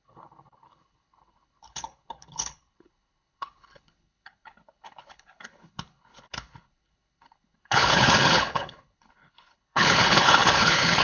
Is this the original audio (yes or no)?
no